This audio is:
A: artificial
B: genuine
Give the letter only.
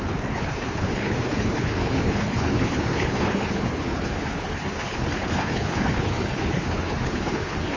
A